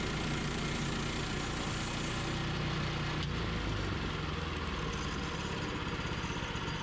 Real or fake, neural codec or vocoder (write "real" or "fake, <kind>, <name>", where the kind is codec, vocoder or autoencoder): real